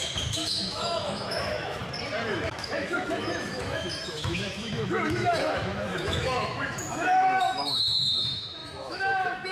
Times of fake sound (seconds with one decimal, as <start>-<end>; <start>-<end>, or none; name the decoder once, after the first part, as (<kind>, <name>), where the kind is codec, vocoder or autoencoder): 0.0-1.8 (autoencoder, DAC-VAE); 2.3-9.5

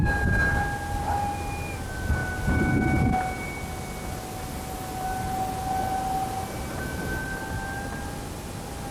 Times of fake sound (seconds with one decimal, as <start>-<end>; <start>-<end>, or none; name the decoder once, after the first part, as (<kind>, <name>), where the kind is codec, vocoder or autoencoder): none